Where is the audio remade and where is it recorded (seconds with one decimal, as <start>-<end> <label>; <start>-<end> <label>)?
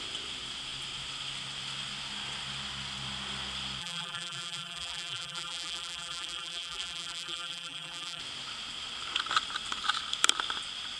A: 0.0-3.8 recorded; 3.8-8.2 remade; 8.2-11.0 recorded